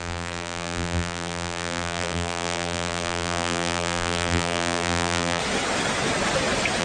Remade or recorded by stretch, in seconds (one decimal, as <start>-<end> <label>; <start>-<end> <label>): 0.0-5.4 remade; 5.4-6.8 recorded